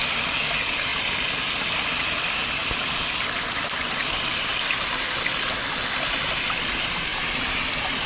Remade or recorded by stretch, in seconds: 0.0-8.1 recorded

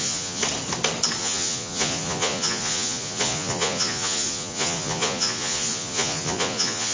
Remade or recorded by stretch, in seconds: 0.0-0.4 remade; 0.4-1.2 recorded; 1.2-6.9 remade

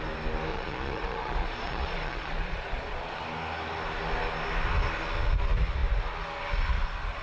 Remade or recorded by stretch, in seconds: 0.0-0.5 recorded; 0.5-3.2 remade; 3.2-7.2 recorded

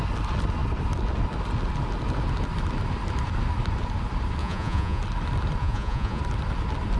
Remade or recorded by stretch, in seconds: 0.0-4.4 recorded; 4.4-5.0 remade; 5.0-5.6 recorded; 5.6-6.2 remade; 6.2-7.0 recorded

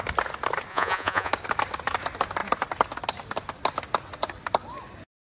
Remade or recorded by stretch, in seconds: 0.0-0.7 recorded; 0.7-1.3 remade; 1.3-5.3 recorded